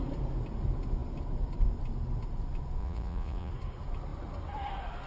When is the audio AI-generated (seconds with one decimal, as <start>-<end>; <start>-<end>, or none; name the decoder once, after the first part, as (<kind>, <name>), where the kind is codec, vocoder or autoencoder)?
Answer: 2.8-3.5 (vocoder, Vocos)